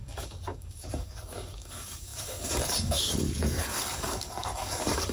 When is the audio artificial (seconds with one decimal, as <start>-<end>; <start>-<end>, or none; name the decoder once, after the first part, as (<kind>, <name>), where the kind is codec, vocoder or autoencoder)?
0.0-5.1 (codec, DAC)